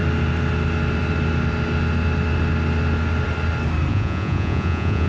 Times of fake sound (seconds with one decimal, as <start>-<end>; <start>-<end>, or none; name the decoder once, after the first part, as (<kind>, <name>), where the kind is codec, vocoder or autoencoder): 3.9-5.1 (vocoder, Vocos)